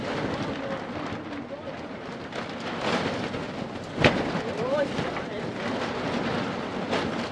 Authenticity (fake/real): real